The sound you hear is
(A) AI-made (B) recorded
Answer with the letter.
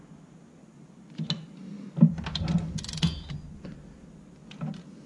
B